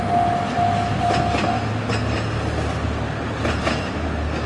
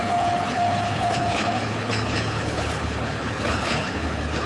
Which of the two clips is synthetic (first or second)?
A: second